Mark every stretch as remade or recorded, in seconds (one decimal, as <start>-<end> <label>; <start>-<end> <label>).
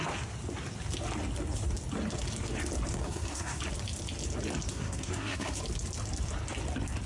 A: 0.0-2.9 recorded; 2.9-3.6 remade; 3.6-4.7 recorded; 4.7-5.6 remade; 5.6-7.1 recorded